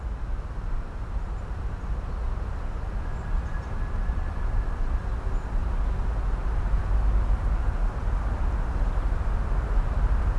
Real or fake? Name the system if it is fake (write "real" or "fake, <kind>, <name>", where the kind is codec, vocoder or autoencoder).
real